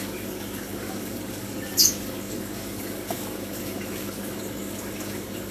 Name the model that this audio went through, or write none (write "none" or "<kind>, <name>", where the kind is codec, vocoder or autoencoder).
codec, DAC